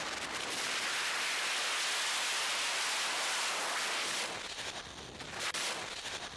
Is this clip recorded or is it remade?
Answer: recorded